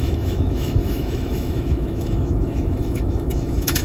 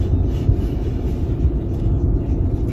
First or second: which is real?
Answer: second